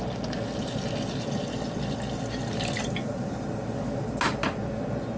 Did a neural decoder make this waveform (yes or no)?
no